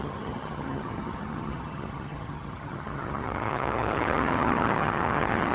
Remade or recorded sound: remade